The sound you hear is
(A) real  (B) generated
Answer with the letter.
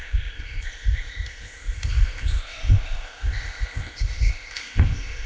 B